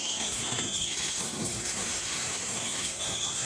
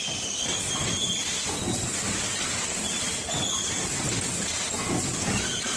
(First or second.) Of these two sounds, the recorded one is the second